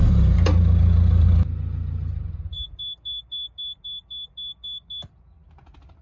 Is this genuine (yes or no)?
yes